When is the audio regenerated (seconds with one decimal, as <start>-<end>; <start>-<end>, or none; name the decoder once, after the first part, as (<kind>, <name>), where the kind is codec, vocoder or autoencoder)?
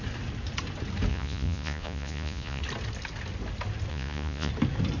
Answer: 1.1-2.6 (vocoder, Vocos); 3.9-4.5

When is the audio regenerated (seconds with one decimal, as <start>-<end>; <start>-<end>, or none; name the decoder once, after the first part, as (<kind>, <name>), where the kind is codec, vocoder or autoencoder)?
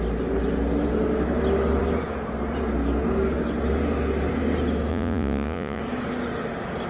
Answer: 4.9-5.8 (vocoder, Vocos)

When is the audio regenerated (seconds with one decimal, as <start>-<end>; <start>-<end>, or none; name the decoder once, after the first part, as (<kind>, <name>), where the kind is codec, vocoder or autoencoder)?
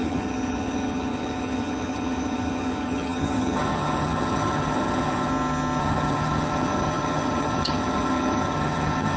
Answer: 0.0-5.3 (vocoder, HiFi-GAN); 5.8-9.2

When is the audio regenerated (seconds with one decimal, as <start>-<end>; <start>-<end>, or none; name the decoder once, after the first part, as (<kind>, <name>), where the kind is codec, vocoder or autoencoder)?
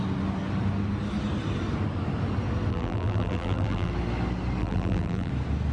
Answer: 2.7-3.9 (vocoder, BigVGAN v2); 4.6-5.3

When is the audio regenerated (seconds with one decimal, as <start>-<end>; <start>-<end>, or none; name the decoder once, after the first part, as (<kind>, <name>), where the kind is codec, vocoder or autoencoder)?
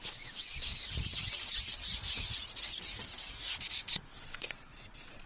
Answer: 0.0-0.7 (vocoder, Vocos); 3.9-5.3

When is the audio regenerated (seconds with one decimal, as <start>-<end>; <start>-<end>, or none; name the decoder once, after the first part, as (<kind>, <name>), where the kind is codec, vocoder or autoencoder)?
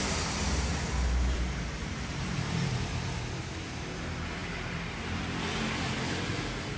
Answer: 0.7-3.4 (vocoder, BigVGAN v2); 4.4-5.2